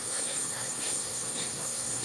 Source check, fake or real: fake